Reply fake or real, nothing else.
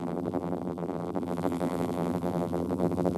fake